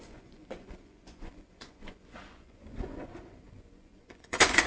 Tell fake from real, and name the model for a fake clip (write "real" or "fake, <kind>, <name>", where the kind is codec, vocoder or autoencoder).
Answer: fake, vocoder, Vocos